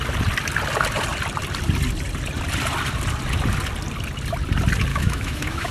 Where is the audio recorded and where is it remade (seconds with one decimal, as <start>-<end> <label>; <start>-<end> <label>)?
0.0-4.9 recorded; 4.9-5.7 remade